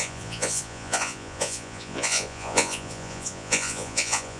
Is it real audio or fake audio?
fake